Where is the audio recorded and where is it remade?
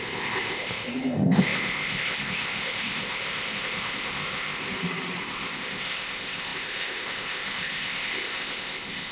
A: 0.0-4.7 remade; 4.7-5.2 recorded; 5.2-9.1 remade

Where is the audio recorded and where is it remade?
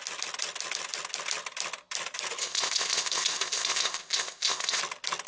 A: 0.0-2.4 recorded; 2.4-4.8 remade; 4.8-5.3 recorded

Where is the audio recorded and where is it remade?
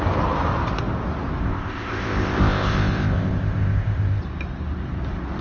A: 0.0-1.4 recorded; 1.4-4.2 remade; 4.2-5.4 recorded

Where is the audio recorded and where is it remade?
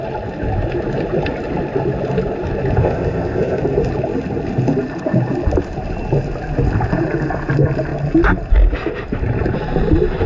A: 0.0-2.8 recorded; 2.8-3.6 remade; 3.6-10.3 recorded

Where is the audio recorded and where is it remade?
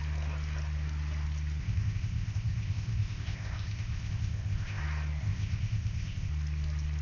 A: 0.0-1.6 recorded; 1.6-4.8 remade; 4.8-5.2 recorded; 5.2-6.3 remade; 6.3-7.0 recorded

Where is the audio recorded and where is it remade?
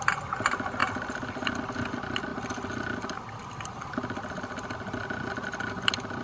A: 0.0-6.2 recorded